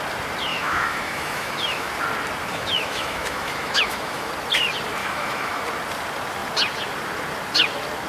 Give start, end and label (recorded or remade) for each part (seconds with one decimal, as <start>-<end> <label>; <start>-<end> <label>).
0.0-0.5 recorded; 0.5-1.9 remade; 1.9-2.5 recorded; 2.5-4.3 remade; 4.3-5.0 recorded; 5.0-5.6 remade; 5.6-8.1 recorded